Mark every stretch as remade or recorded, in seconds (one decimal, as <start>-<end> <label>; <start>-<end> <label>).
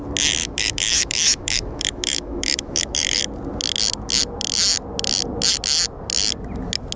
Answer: 0.0-0.4 recorded; 0.4-3.2 remade; 3.2-7.0 recorded